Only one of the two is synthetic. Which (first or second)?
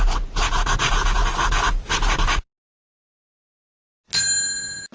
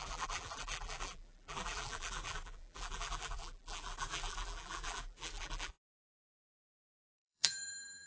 second